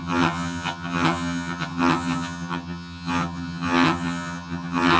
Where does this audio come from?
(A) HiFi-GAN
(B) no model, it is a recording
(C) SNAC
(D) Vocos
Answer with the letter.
A